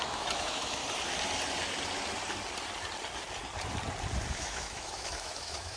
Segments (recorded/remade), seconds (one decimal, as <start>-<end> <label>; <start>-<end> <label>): 0.0-0.8 remade; 0.8-4.3 recorded; 4.3-5.8 remade